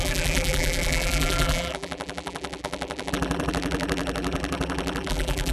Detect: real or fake fake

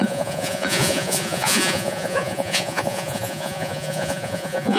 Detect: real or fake fake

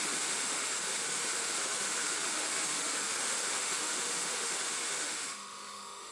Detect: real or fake fake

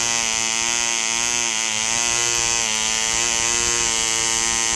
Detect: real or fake real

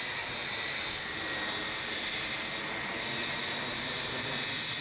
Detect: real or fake real